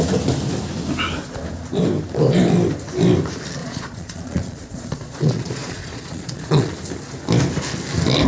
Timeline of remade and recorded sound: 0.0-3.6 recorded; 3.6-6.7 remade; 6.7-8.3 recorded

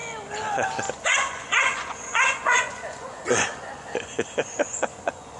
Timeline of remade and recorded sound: 0.0-0.9 recorded; 0.9-5.4 remade

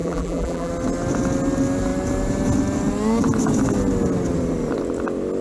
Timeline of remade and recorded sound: 0.0-0.7 remade; 0.7-5.4 recorded

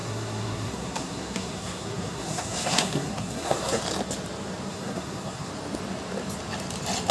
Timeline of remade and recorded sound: 0.0-3.8 remade; 3.8-4.7 recorded; 4.7-5.5 remade; 5.5-7.1 recorded

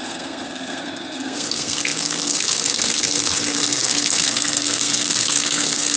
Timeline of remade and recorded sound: 0.0-6.0 remade

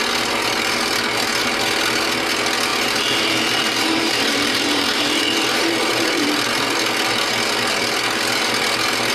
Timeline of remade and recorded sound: 0.0-2.7 recorded; 2.7-6.5 remade; 6.5-9.1 recorded